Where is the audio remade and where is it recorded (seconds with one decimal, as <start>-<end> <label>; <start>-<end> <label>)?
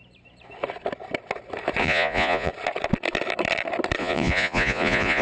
0.0-1.8 recorded; 1.8-2.5 remade; 2.5-4.0 recorded; 4.0-5.2 remade